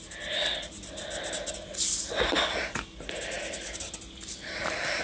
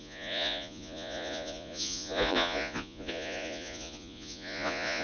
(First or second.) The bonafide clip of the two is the first